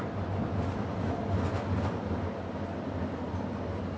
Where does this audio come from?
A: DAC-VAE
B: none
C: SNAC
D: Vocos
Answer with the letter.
B